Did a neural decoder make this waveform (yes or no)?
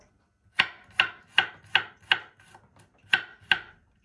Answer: no